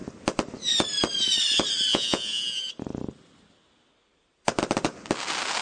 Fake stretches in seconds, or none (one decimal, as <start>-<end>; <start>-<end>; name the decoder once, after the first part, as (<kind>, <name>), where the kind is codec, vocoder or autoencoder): 1.9-2.7 (vocoder, Vocos)